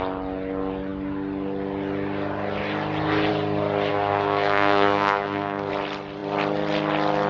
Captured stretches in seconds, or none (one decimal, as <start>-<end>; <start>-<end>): 0.0-3.9; 5.7-7.3